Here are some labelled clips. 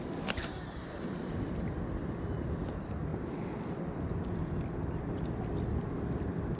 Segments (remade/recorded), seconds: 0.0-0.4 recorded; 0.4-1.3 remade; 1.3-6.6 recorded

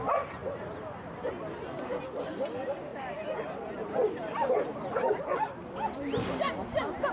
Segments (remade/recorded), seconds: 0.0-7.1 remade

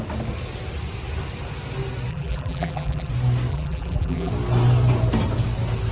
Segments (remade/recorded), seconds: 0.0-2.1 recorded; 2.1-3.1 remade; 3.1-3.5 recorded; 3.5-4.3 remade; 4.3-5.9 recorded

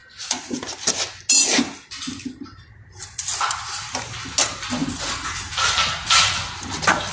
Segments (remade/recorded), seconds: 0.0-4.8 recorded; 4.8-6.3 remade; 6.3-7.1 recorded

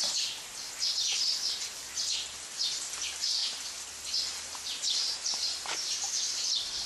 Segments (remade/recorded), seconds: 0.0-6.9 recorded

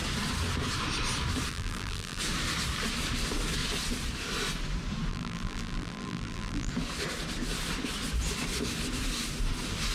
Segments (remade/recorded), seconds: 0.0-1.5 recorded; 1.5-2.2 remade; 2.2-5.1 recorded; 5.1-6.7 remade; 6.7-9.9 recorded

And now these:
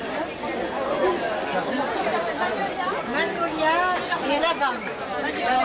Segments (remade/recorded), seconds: 0.0-5.6 recorded